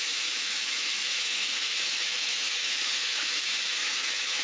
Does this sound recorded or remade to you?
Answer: remade